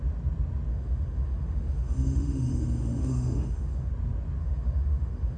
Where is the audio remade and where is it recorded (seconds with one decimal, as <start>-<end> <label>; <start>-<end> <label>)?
0.0-0.7 recorded; 0.7-3.9 remade; 3.9-4.4 recorded; 4.4-5.4 remade